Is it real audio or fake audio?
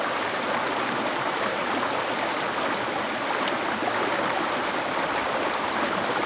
real